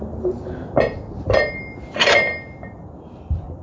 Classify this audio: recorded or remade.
recorded